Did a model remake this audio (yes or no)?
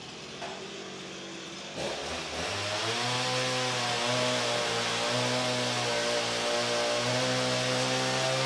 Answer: no